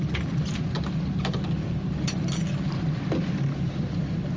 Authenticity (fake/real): real